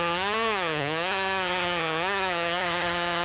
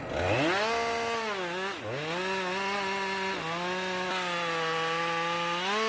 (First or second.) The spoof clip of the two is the first